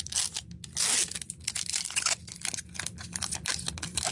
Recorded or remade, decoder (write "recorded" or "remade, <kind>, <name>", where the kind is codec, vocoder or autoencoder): recorded